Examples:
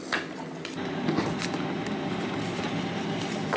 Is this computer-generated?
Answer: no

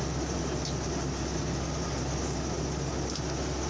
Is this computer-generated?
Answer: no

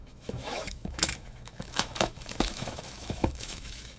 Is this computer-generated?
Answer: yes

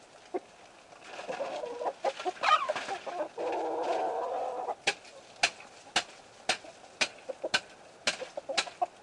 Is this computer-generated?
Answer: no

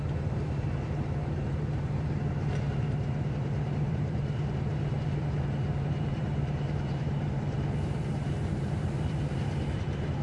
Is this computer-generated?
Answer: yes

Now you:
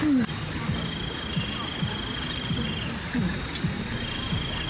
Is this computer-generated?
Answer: no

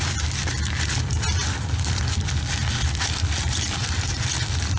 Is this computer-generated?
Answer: no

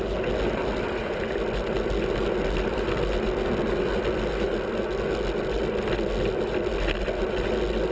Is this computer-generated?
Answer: no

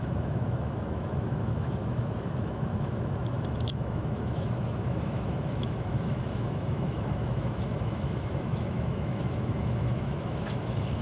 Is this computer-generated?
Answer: yes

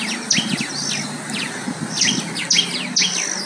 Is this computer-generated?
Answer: no